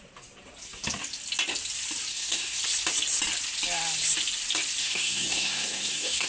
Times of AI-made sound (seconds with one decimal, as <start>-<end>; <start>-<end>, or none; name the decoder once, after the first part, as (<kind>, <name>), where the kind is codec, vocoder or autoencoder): 2.1-2.6 (codec, SNAC); 4.8-6.3